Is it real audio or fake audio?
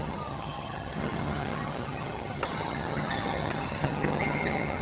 fake